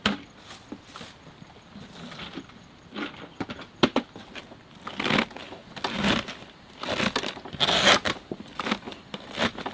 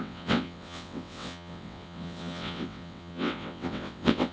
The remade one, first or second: second